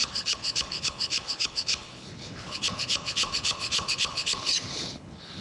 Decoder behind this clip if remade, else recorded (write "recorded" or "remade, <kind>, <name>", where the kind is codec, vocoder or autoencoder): remade, codec, HILCodec